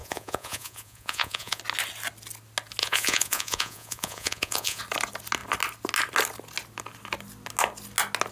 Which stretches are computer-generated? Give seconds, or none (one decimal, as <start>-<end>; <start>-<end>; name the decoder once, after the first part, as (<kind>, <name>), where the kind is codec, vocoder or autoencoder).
0.0-1.6 (vocoder, Vocos); 2.8-4.8